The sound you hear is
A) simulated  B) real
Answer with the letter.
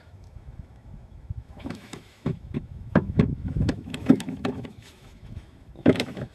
A